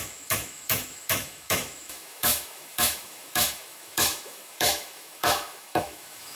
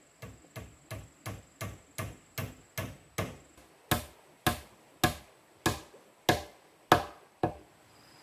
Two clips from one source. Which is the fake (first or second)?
first